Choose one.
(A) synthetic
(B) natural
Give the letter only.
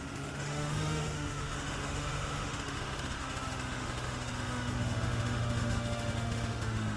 A